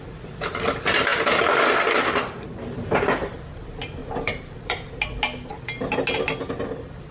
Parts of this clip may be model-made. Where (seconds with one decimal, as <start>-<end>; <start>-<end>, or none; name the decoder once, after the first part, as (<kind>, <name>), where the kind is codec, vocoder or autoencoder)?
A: 4.0-4.9 (vocoder, BigVGAN v2)